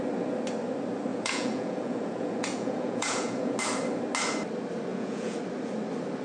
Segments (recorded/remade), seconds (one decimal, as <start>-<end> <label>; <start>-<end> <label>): 0.0-1.1 recorded; 1.1-3.6 remade; 3.6-4.9 recorded; 4.9-5.4 remade; 5.4-6.2 recorded